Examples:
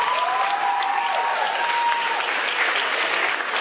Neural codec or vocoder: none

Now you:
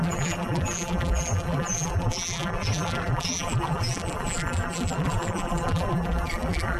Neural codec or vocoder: vocoder, BigVGAN v2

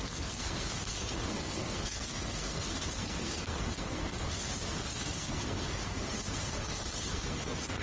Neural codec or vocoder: codec, SNAC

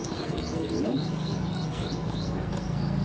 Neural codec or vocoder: codec, SNAC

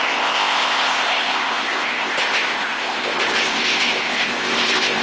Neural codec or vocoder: codec, ZipCodec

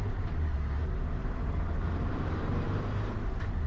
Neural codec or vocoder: none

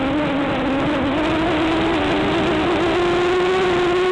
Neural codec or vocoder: none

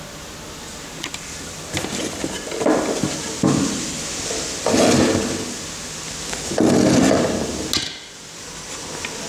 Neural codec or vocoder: none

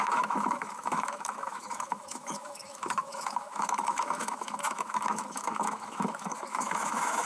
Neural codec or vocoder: autoencoder, DAC-VAE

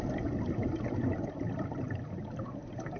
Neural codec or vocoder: none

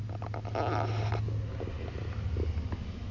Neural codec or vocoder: none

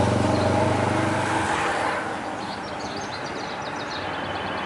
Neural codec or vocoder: none